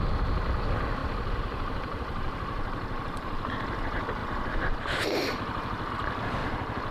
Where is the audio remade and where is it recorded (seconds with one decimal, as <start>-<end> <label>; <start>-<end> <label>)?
0.0-1.0 recorded; 1.0-3.5 remade; 3.5-4.2 recorded; 4.2-5.9 remade; 5.9-6.4 recorded; 6.4-6.9 remade

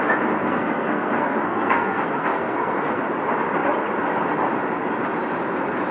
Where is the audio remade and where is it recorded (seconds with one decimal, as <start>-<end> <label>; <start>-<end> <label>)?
0.0-0.4 recorded; 0.4-3.0 remade; 3.0-5.9 recorded

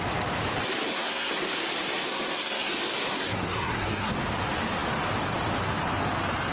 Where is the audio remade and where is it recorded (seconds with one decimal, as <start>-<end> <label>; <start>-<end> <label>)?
0.0-0.9 recorded; 0.9-1.4 remade; 1.4-2.1 recorded; 2.1-2.7 remade; 2.7-3.1 recorded; 3.1-4.1 remade; 4.1-6.5 recorded